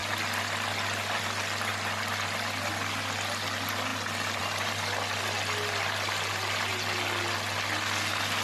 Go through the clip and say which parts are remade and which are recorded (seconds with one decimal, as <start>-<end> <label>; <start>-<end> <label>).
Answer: 0.0-8.4 recorded